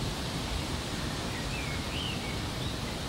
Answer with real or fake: fake